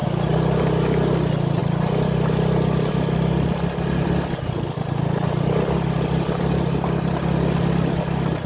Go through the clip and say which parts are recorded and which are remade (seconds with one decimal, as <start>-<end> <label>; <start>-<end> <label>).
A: 0.0-8.5 recorded